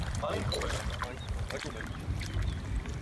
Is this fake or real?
real